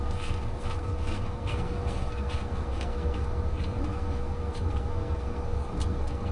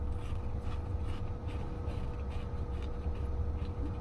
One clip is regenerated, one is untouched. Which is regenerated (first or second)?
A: first